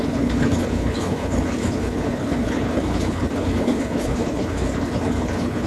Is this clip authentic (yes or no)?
no